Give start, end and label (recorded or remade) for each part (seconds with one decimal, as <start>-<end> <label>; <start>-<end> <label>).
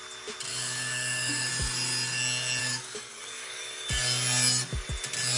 0.0-0.5 recorded; 0.5-1.5 remade; 1.5-2.6 recorded; 2.6-3.9 remade; 3.9-5.4 recorded